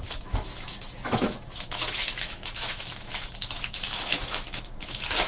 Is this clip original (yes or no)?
no